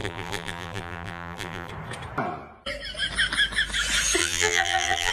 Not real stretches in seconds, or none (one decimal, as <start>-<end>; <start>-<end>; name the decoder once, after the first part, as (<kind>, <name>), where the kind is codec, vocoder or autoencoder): 0.0-1.7 (vocoder, BigVGAN v2); 4.2-5.1